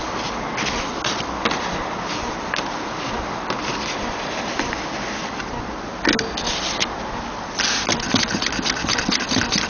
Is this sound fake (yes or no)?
no